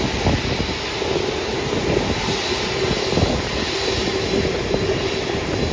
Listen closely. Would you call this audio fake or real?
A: real